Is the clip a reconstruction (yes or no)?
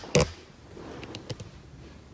no